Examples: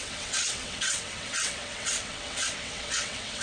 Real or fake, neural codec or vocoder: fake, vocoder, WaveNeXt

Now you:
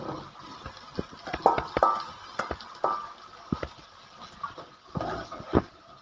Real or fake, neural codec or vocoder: real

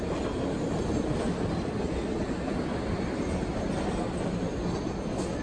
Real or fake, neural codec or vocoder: real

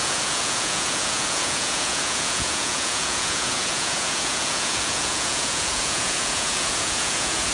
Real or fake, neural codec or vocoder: fake, vocoder, Vocos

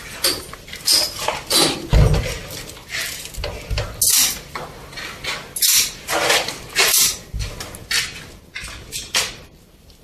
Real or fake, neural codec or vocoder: real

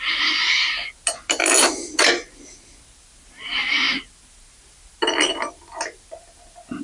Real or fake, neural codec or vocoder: real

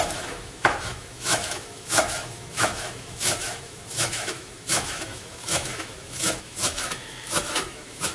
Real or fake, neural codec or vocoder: fake, autoencoder, DAC-VAE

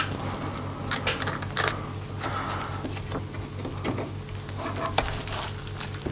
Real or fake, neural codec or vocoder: real